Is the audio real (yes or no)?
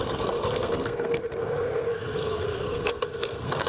no